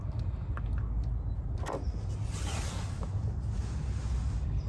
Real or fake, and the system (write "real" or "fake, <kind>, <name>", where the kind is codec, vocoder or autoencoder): real